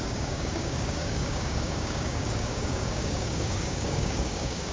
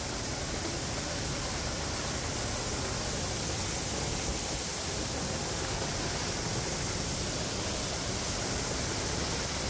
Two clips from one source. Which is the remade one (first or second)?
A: first